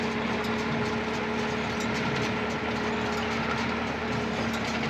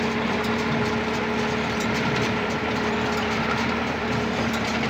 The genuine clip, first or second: first